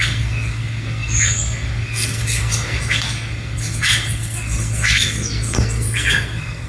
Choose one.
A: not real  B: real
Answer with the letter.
A